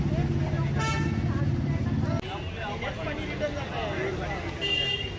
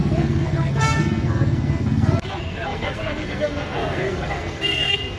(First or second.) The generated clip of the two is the second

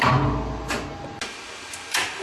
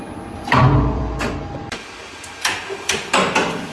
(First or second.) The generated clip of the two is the second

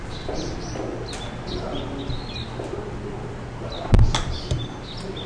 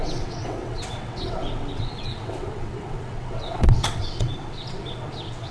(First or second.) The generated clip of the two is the second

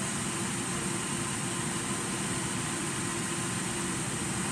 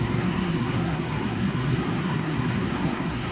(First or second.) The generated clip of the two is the second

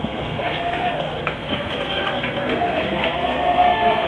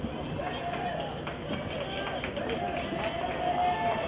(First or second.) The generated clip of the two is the first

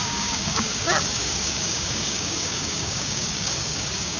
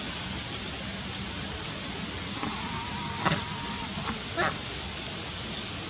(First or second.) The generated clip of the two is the first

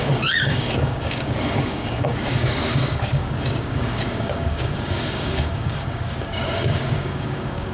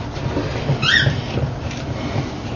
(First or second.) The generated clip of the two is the first